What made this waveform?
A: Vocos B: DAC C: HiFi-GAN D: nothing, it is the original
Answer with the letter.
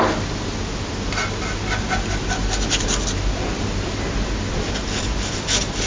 D